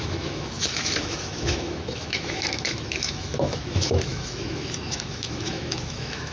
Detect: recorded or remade remade